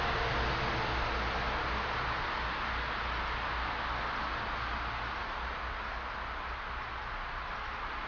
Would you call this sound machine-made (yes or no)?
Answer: no